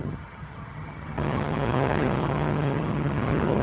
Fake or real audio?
fake